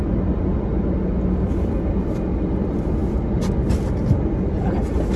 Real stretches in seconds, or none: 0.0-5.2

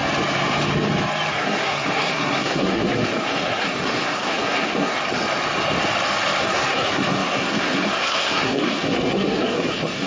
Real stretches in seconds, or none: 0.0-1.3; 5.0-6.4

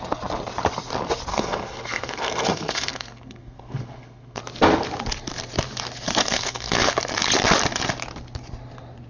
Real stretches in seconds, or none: 0.0-1.3; 4.4-6.2; 6.9-9.1